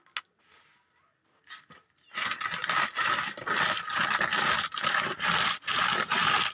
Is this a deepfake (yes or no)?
no